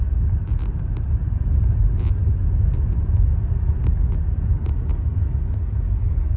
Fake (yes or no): no